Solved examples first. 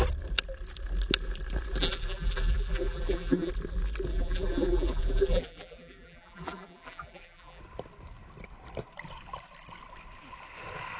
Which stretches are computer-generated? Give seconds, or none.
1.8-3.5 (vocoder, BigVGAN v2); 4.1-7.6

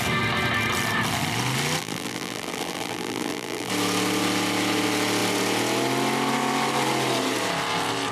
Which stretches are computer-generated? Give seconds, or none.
1.8-3.7 (vocoder, BigVGAN v2)

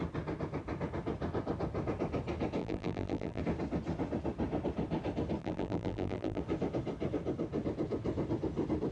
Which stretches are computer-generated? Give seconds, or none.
2.6-3.4 (vocoder, BigVGAN v2); 5.4-6.4

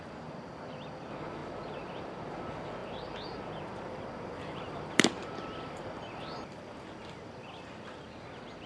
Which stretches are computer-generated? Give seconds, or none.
2.8-7.7 (vocoder, BigVGAN v2)

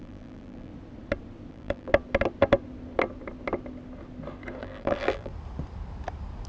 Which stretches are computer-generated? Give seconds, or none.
0.0-0.7 (vocoder, BigVGAN v2); 1.5-1.9; 4.6-5.3

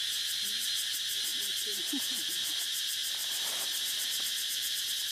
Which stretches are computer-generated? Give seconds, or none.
3.0-4.0 (vocoder, BigVGAN v2)

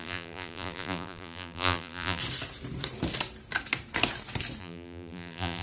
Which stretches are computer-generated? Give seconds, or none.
0.0-2.2 (vocoder, BigVGAN v2); 4.6-5.6

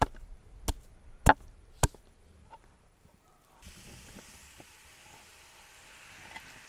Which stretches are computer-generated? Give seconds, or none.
0.0-0.4 (vocoder, BigVGAN v2); 2.3-3.3